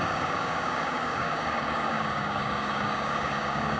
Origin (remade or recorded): remade